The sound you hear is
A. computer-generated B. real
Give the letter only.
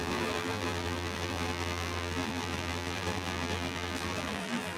A